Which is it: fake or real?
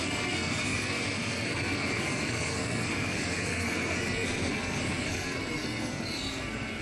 fake